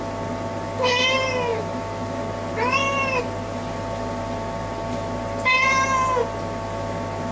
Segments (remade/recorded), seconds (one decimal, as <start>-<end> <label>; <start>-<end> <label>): 0.0-7.3 recorded